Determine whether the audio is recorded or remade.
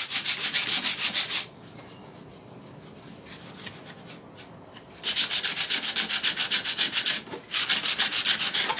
recorded